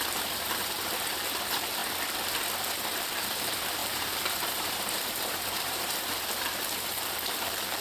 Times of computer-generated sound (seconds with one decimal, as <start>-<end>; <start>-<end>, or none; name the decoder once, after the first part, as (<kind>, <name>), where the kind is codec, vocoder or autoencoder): 0.0-1.8 (vocoder, BigVGAN v2); 3.0-7.8